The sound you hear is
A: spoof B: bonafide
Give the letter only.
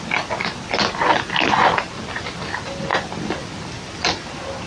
B